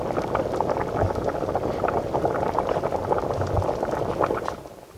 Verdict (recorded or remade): recorded